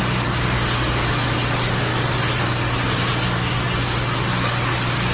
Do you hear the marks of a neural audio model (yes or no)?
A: no